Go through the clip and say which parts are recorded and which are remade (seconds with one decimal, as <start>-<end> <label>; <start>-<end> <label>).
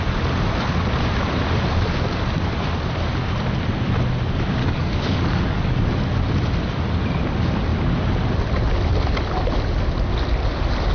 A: 0.0-4.6 recorded; 4.6-5.8 remade; 5.8-10.9 recorded